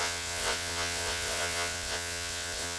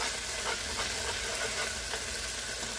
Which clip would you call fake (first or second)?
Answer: first